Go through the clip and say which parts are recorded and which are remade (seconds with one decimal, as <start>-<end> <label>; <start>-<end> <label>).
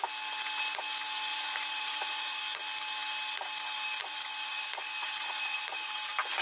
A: 0.0-1.3 recorded; 1.3-2.4 remade; 2.4-4.0 recorded; 4.0-5.9 remade; 5.9-6.4 recorded